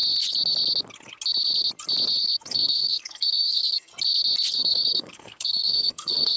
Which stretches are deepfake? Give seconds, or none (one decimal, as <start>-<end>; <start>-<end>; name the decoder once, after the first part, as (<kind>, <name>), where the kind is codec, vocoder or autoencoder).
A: 2.5-3.9 (codec, SNAC); 4.5-6.4